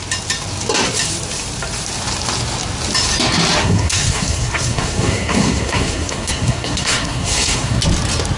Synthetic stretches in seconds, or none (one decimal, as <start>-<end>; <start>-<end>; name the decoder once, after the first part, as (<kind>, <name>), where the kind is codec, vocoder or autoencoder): 3.6-7.8 (codec, SNAC)